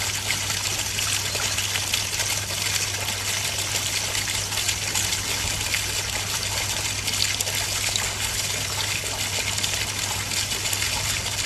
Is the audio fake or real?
real